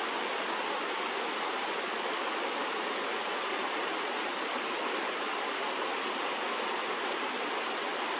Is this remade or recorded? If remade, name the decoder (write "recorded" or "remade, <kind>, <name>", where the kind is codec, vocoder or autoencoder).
recorded